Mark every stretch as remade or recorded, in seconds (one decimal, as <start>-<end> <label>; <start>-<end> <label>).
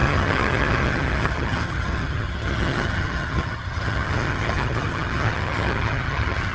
0.0-6.5 remade